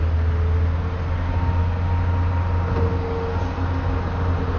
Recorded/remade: recorded